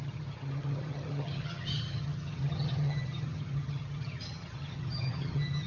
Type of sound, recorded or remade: remade